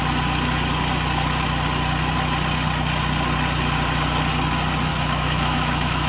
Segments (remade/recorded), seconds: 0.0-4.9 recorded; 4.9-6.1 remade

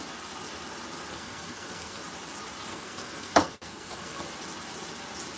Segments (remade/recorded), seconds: 0.0-1.1 recorded; 1.1-2.0 remade; 2.0-2.7 recorded; 2.7-4.3 remade; 4.3-5.4 recorded

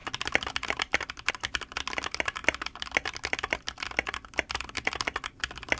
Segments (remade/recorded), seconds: 0.0-5.8 recorded

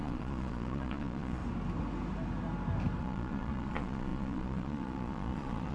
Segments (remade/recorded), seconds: 0.0-1.4 remade; 1.4-3.0 recorded; 3.0-5.7 remade

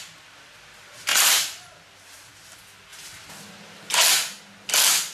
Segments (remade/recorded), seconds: 0.0-1.1 recorded; 1.1-2.3 remade; 2.3-2.9 recorded; 2.9-3.9 remade; 3.9-5.1 recorded

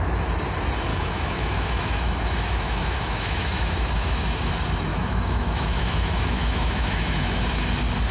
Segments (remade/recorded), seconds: 0.0-0.9 recorded; 0.9-4.5 remade; 4.5-4.9 recorded; 4.9-7.6 remade; 7.6-8.1 recorded

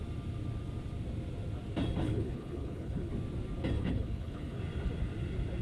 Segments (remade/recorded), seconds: 0.0-2.0 recorded; 2.0-3.1 remade; 3.1-3.8 recorded; 3.8-4.6 remade; 4.6-5.6 recorded

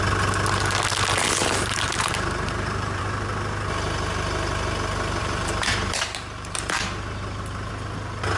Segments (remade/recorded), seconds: 0.0-1.4 recorded; 1.4-3.0 remade; 3.0-5.2 recorded; 5.2-7.7 remade; 7.7-8.4 recorded